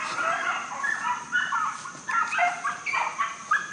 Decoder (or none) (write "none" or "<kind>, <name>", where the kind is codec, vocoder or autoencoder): none